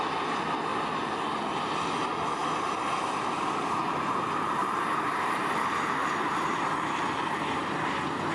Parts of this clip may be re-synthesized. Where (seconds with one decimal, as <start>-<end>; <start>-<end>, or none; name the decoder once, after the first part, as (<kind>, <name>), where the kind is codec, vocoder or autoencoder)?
4.6-7.2 (vocoder, BigVGAN v2)